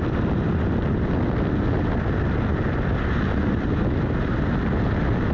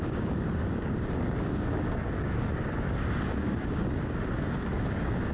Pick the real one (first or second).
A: first